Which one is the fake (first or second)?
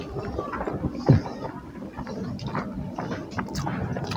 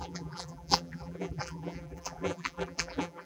second